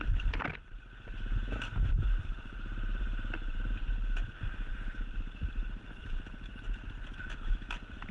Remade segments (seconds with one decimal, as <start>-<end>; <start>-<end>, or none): 1.7-3.6; 4.7-6.6